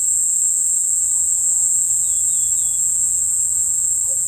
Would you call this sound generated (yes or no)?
yes